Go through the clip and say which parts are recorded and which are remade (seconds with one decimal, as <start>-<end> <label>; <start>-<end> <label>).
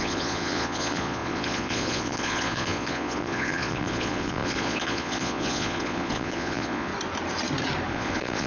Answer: 0.0-6.9 remade; 6.9-7.9 recorded; 7.9-8.5 remade